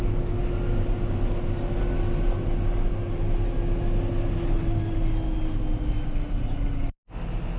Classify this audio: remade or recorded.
recorded